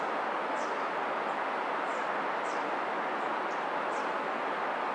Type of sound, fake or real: real